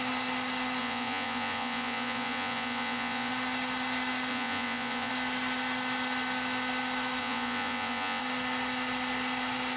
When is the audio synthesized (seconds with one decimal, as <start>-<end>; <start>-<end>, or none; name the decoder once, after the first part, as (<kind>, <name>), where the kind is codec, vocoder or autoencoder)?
0.8-3.3 (vocoder, Vocos); 4.3-5.1; 7.2-8.2